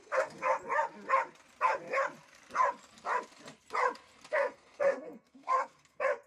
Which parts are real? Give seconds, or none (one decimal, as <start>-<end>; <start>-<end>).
0.5-4.3